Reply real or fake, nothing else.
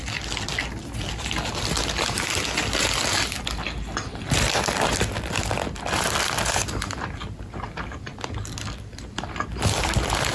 real